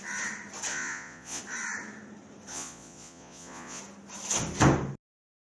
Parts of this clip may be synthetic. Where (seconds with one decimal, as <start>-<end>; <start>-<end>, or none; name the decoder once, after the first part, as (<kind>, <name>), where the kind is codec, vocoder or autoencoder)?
0.7-1.4 (vocoder, Vocos); 2.5-3.8